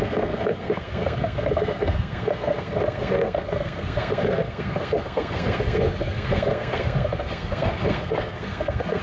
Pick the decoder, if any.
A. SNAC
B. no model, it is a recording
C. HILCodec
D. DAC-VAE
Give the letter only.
A